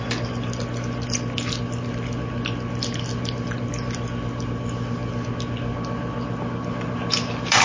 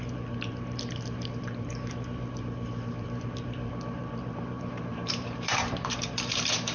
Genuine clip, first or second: first